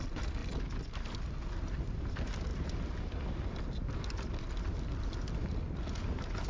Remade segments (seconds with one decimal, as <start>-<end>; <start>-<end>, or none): none